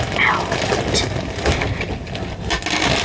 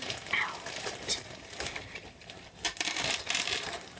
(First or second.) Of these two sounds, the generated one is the second